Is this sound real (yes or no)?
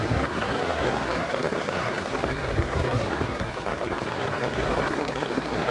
no